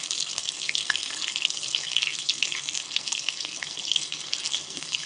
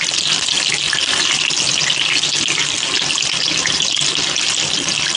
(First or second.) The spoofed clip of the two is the first